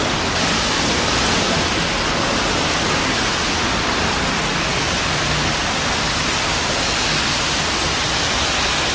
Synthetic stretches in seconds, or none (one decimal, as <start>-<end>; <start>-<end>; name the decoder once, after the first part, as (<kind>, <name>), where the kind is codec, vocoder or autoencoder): none